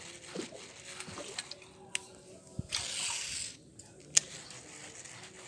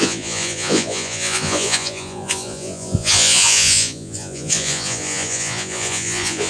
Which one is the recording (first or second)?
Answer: first